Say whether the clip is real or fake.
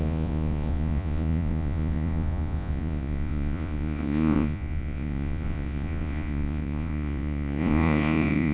fake